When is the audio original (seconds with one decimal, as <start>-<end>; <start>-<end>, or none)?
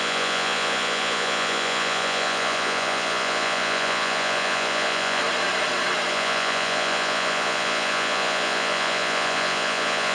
5.2-6.1